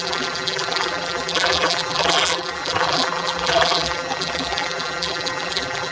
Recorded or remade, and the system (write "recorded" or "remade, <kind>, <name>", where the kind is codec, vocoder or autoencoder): remade, vocoder, BigVGAN v2